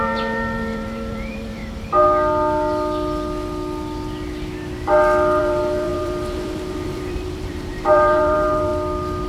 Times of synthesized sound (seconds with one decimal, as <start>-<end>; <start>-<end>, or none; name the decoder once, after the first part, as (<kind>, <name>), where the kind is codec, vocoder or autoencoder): 0.0-1.6 (vocoder, BigVGAN v2); 5.4-8.7